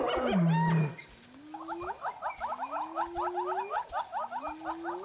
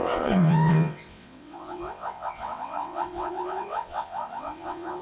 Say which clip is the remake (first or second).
second